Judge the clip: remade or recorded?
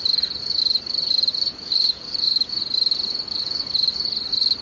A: recorded